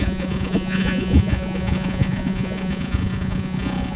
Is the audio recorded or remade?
remade